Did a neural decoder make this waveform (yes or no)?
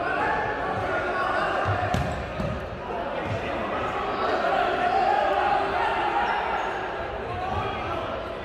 no